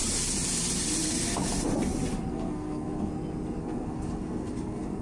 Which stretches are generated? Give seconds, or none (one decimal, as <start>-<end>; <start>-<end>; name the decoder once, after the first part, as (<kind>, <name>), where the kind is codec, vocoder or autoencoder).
2.3-3.1 (codec, SNAC); 3.6-5.0